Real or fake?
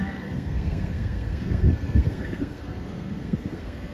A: fake